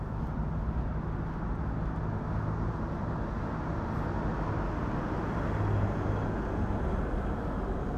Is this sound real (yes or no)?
yes